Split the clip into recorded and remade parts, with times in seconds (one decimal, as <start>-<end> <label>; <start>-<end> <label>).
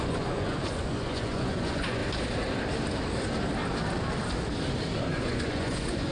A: 0.0-2.0 remade; 2.0-5.1 recorded; 5.1-6.1 remade